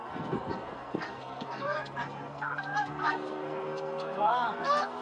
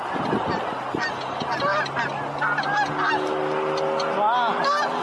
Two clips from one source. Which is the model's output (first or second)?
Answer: first